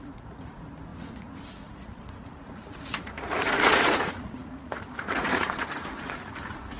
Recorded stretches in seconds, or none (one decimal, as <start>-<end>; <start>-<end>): none